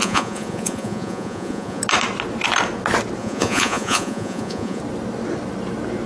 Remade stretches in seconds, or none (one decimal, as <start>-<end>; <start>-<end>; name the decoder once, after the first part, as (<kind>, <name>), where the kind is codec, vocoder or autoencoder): 0.0-1.8 (vocoder, Vocos); 3.2-4.8